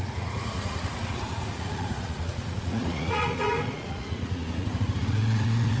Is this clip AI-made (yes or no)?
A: yes